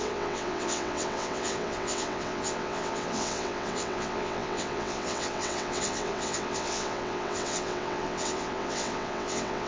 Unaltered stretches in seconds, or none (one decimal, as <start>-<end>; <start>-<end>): none